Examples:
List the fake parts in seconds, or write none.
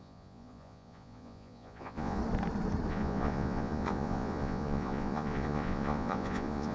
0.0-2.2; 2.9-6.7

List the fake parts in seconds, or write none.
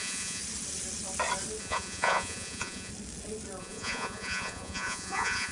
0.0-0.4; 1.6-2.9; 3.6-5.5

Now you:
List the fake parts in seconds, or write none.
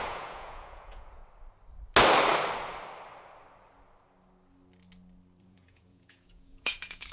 0.0-1.2; 5.4-7.1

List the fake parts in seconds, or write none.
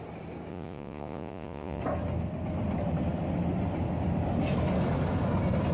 0.5-1.8